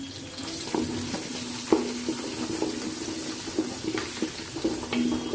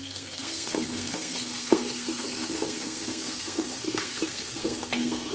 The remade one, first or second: second